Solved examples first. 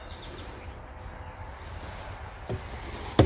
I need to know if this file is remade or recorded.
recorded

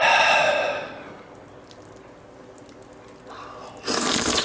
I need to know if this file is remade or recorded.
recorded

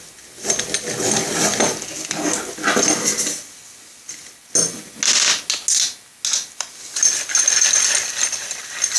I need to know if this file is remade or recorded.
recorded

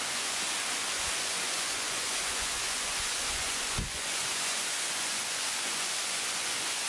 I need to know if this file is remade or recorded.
remade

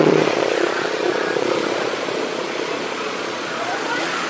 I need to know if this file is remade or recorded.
remade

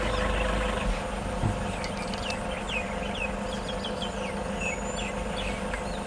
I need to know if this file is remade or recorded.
recorded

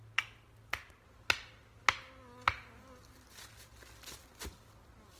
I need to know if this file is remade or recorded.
recorded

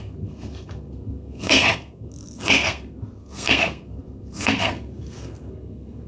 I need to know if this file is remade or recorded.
remade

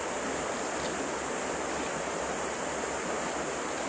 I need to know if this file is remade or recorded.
recorded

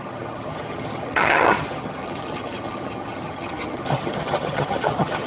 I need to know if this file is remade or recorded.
remade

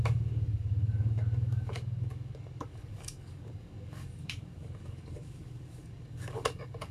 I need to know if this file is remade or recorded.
remade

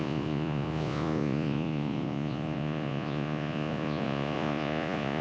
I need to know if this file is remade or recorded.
remade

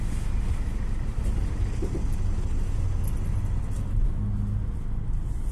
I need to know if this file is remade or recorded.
recorded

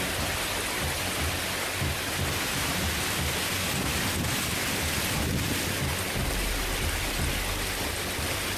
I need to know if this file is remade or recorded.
recorded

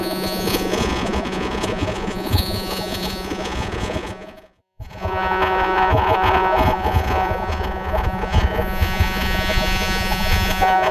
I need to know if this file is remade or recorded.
remade